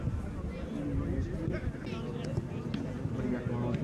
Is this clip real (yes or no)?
yes